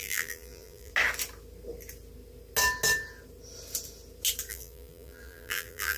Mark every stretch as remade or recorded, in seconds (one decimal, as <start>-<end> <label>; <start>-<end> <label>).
0.0-0.9 remade; 0.9-4.5 recorded; 4.5-6.0 remade